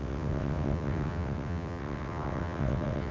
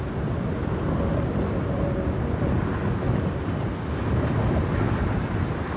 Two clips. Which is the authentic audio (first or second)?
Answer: second